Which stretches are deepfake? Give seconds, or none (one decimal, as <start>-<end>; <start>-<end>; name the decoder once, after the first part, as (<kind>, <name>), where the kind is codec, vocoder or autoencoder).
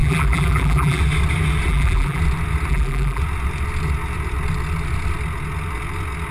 0.0-1.0 (vocoder, BigVGAN v2); 1.7-2.2; 2.7-3.2